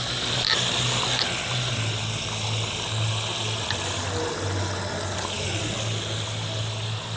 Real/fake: real